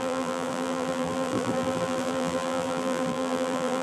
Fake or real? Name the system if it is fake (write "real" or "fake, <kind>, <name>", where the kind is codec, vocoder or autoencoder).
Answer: fake, vocoder, BigVGAN v2